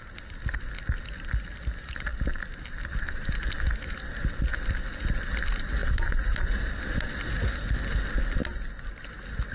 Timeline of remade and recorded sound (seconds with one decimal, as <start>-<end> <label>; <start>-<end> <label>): 0.0-5.8 recorded; 5.8-6.7 remade; 6.7-9.5 recorded